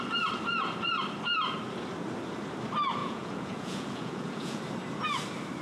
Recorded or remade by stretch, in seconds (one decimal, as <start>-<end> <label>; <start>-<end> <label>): 0.0-3.0 recorded; 3.0-4.6 remade; 4.6-5.6 recorded